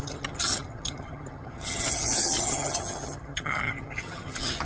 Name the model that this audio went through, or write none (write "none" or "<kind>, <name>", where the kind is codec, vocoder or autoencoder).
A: vocoder, HiFi-GAN